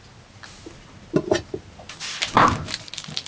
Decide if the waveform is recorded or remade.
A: recorded